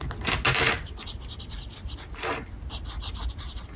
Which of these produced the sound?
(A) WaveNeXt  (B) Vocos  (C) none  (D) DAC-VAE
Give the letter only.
C